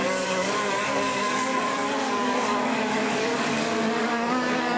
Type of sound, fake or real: fake